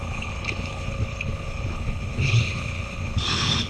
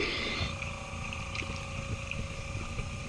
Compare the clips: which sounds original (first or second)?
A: second